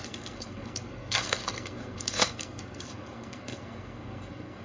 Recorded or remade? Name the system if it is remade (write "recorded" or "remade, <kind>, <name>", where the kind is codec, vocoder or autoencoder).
remade, codec, SNAC